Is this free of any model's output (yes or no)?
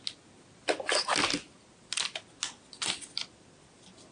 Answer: yes